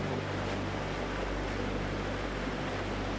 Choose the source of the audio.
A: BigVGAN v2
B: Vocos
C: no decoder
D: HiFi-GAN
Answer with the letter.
C